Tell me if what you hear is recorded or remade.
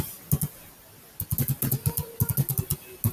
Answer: recorded